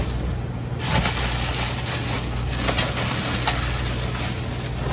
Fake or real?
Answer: real